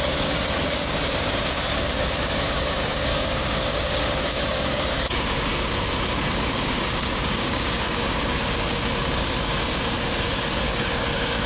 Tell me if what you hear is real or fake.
fake